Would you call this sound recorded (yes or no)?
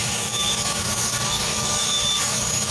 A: no